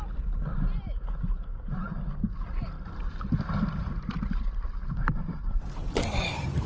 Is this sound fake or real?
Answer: real